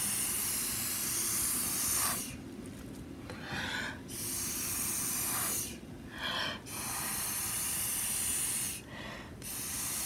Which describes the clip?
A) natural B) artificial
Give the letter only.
A